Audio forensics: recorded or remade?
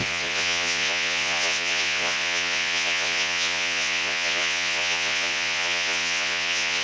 remade